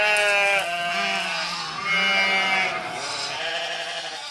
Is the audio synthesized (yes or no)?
no